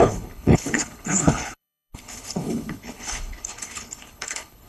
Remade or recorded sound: remade